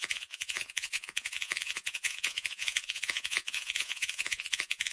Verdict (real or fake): fake